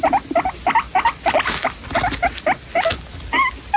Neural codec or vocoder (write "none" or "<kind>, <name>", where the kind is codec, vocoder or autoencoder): none